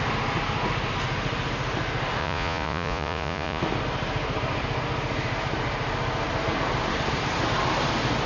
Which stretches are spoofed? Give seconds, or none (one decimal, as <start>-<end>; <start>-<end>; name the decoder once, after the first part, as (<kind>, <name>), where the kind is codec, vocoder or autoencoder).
2.2-3.6 (vocoder, Vocos)